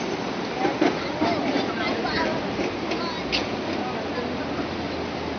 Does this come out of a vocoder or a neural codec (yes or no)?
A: no